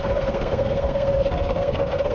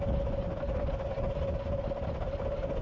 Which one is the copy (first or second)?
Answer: first